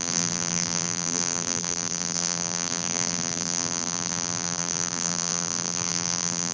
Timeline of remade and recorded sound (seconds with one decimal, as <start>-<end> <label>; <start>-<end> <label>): 0.0-6.5 remade